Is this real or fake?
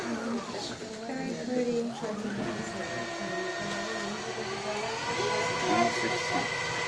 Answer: real